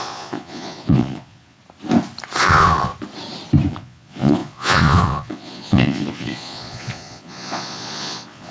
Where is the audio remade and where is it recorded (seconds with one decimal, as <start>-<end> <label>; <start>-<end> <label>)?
0.0-1.6 remade; 1.6-2.4 recorded; 2.4-2.9 remade; 2.9-3.7 recorded; 3.7-8.5 remade